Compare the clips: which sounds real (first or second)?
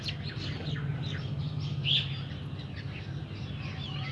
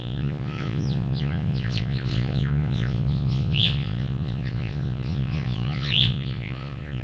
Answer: first